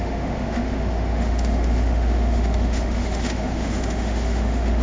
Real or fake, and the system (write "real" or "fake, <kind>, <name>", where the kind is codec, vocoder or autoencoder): fake, autoencoder, DAC-VAE